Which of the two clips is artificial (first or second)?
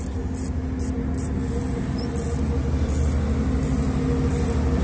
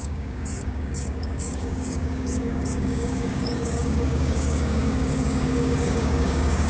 second